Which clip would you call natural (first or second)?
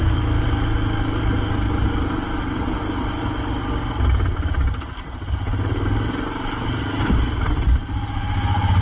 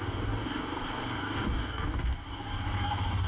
first